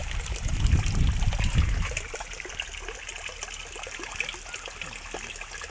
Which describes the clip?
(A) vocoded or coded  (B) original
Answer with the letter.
B